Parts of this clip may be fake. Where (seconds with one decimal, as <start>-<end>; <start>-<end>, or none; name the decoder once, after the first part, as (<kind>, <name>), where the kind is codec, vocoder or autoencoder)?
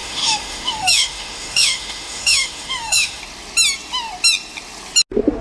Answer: 0.0-3.2 (autoencoder, DAC-VAE)